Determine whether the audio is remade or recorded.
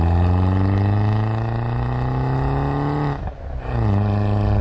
recorded